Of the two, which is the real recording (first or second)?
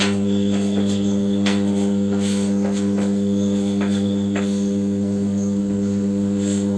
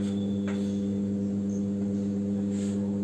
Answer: second